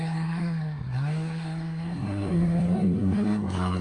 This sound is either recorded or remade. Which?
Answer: remade